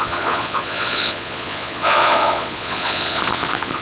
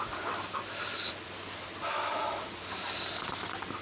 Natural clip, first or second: second